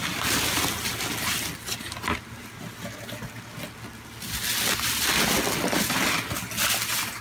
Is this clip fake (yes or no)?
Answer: no